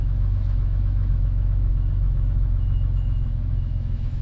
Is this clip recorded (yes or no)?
no